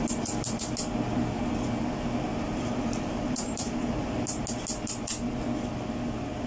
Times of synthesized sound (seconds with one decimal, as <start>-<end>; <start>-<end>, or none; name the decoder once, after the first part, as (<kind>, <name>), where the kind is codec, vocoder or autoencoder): 2.3-4.0 (vocoder, BigVGAN v2)